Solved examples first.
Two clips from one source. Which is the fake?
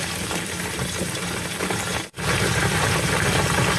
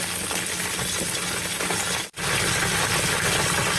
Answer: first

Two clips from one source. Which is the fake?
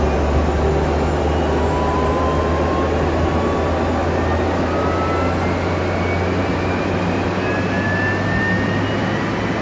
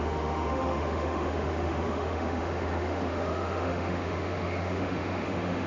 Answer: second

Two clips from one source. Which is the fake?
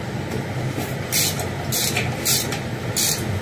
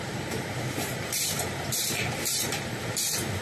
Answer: second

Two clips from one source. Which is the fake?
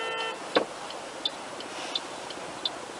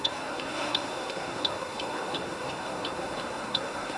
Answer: second